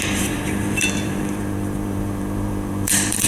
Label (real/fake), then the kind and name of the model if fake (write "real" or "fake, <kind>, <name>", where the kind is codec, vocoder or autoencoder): fake, vocoder, BigVGAN v2